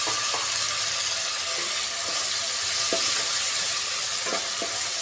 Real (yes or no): yes